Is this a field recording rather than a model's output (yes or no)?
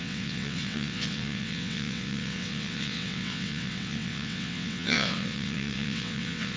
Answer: no